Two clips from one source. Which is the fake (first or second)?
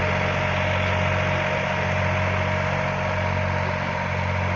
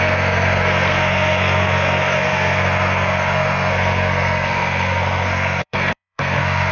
second